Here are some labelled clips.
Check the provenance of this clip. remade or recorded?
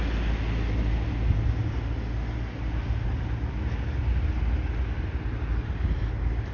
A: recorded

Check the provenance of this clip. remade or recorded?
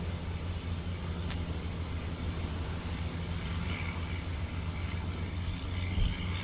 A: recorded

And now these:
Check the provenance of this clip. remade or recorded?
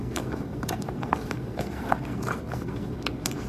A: remade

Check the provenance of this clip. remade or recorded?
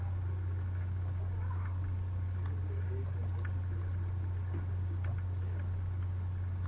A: recorded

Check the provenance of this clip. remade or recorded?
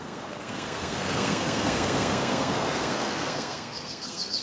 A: remade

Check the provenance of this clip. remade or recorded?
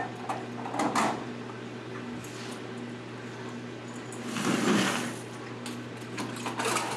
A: recorded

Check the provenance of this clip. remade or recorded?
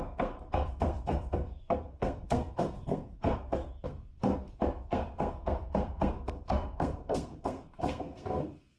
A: remade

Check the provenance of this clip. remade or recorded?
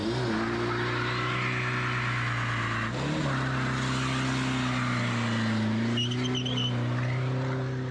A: recorded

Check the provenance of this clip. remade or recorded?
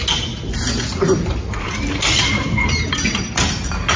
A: recorded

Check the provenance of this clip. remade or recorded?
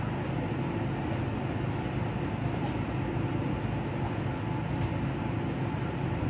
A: recorded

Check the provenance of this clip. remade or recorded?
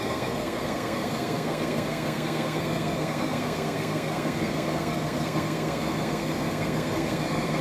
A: remade